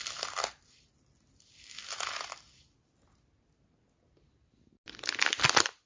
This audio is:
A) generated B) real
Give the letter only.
B